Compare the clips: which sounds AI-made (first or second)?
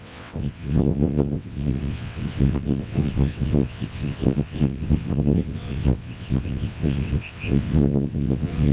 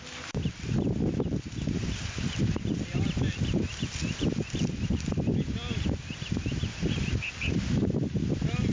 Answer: first